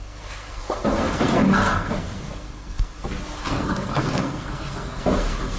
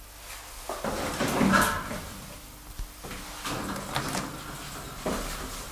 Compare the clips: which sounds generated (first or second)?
first